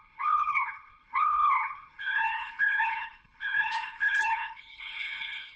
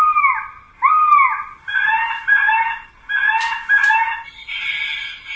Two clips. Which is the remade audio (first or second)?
first